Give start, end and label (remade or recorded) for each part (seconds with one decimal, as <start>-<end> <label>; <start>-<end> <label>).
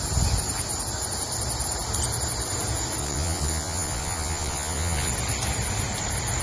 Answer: 0.0-3.0 recorded; 3.0-5.1 remade; 5.1-6.4 recorded